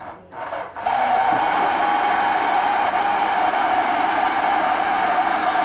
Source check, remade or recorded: recorded